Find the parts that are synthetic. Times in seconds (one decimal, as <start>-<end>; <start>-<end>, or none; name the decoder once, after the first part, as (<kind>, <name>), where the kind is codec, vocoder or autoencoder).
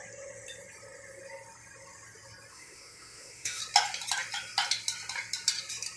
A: 2.5-3.6 (autoencoder, DAC-VAE)